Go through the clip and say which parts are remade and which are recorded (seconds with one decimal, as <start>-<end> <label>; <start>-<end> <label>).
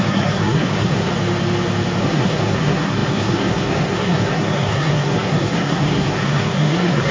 0.0-1.1 remade; 1.1-2.0 recorded; 2.0-7.1 remade